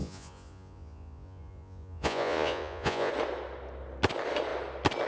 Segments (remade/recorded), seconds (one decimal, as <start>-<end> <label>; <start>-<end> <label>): 0.0-3.1 remade; 3.1-5.1 recorded